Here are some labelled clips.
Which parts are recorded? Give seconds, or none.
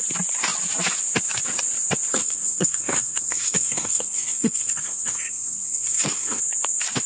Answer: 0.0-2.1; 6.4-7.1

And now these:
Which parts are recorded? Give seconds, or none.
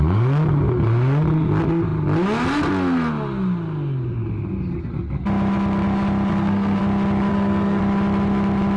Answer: 0.0-6.3; 6.8-7.3; 7.8-8.8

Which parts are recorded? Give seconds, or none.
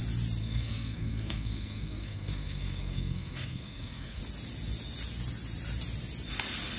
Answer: 0.0-0.4; 4.2-6.8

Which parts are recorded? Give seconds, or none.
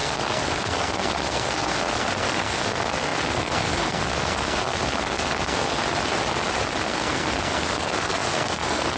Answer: 5.8-6.8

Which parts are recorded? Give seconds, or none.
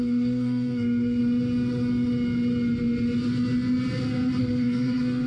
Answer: 1.2-4.4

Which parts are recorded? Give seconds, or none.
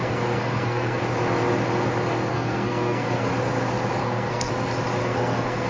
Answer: 1.0-2.3; 3.3-4.0; 4.5-5.0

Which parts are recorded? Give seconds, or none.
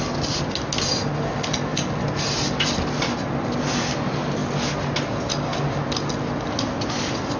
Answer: 0.0-7.4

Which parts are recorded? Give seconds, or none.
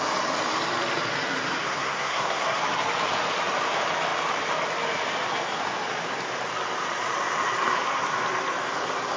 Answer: 0.0-1.6; 2.6-9.2